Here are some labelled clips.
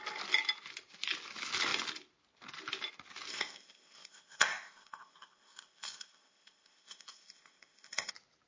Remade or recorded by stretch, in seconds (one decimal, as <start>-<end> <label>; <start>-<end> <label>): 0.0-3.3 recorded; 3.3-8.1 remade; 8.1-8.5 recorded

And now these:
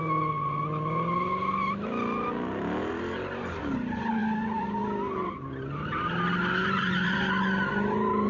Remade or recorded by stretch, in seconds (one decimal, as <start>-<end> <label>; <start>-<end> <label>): 0.0-2.8 recorded; 2.8-3.6 remade; 3.6-4.2 recorded; 4.2-4.8 remade; 4.8-6.6 recorded; 6.6-7.2 remade; 7.2-8.3 recorded

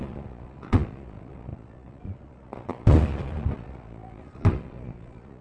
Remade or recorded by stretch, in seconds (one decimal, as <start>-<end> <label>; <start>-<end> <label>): 0.0-5.4 remade

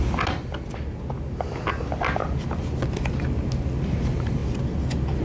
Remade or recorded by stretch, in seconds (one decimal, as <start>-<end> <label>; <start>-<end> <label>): 0.0-5.2 recorded